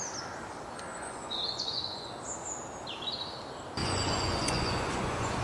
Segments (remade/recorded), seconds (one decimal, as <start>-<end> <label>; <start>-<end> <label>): 0.0-0.9 recorded; 0.9-2.1 remade; 2.1-3.8 recorded; 3.8-5.4 remade